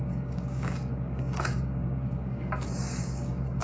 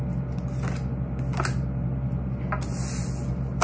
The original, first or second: second